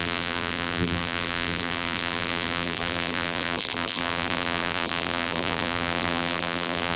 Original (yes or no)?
no